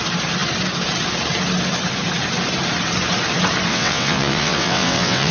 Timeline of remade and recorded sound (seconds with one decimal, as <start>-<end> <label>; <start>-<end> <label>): 0.0-3.7 recorded; 3.7-5.3 remade